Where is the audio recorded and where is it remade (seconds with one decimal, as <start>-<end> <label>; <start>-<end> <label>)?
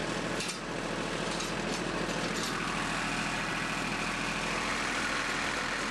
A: 0.0-5.9 recorded